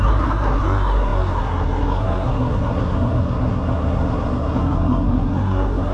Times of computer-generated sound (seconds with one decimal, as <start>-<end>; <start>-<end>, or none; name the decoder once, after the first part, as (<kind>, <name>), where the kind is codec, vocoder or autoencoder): 0.0-5.9 (codec, SNAC)